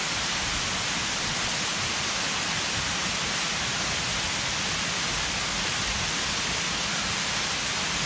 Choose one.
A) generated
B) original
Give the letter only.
B